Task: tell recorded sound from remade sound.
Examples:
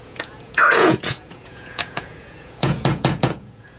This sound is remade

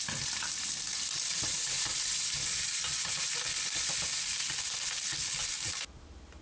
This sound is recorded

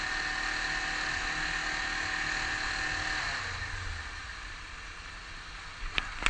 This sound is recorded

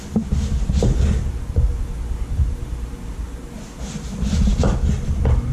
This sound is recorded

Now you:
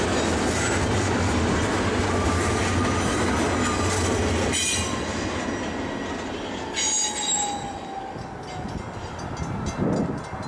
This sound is recorded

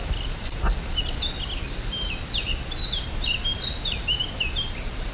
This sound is recorded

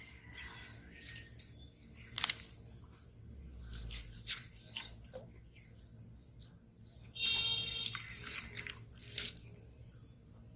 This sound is recorded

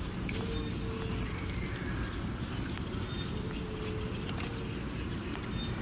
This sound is recorded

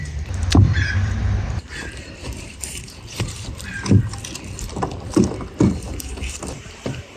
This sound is remade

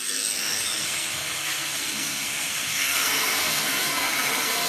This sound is remade